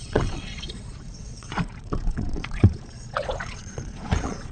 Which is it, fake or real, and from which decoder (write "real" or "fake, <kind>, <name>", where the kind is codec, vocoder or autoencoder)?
fake, vocoder, Vocos